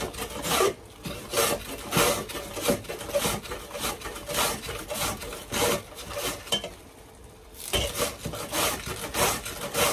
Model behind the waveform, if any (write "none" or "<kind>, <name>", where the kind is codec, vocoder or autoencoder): none